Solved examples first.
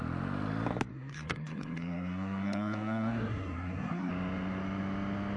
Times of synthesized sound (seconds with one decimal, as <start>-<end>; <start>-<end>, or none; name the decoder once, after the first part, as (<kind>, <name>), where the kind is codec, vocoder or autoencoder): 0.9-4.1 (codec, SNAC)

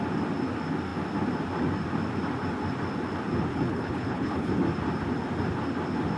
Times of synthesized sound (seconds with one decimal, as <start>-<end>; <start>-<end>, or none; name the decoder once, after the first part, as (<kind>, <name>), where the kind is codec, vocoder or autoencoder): 3.5-4.5 (codec, HILCodec)

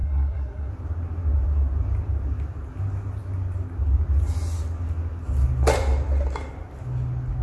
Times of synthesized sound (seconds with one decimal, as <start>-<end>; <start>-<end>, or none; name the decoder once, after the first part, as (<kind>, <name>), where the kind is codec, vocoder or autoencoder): 0.0-0.7 (codec, SNAC)